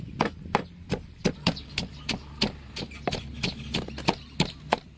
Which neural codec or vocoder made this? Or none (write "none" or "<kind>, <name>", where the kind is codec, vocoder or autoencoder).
none